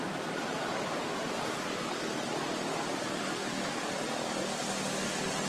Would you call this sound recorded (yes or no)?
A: yes